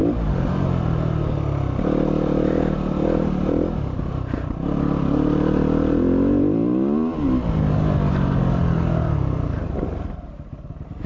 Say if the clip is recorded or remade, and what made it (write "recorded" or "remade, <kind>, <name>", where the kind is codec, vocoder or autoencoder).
recorded